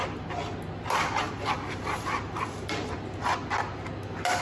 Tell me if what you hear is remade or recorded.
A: recorded